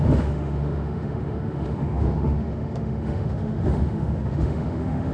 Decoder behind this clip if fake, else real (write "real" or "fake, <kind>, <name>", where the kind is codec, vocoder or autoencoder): fake, autoencoder, DAC-VAE